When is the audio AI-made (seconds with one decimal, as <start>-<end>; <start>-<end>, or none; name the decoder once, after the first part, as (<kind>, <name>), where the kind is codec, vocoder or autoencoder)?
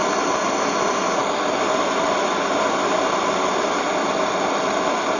none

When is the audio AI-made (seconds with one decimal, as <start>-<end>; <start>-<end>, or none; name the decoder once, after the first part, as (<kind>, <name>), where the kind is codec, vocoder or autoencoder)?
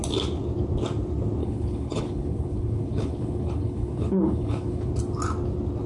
1.4-4.9 (codec, HILCodec)